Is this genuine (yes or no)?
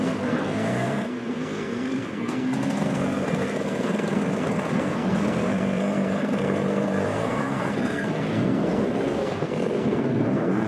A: no